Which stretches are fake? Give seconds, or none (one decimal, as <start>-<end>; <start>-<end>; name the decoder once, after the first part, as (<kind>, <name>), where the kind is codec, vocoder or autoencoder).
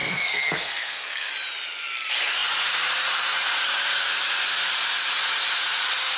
0.0-1.3 (codec, SNAC)